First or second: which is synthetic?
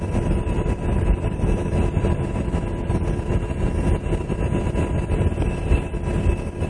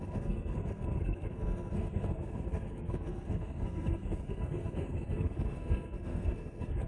second